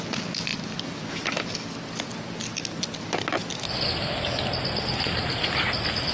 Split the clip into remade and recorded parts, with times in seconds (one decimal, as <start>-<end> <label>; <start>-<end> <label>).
0.0-6.1 recorded